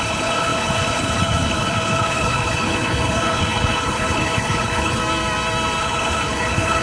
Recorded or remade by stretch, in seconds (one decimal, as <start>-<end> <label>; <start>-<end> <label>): 0.0-5.0 remade; 5.0-5.8 recorded; 5.8-6.8 remade